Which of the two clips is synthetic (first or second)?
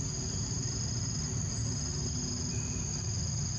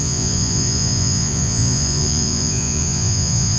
second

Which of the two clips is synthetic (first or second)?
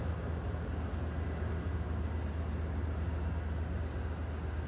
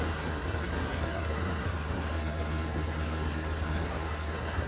second